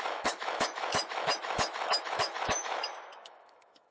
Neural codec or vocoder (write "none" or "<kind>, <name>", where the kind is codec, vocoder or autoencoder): autoencoder, DAC-VAE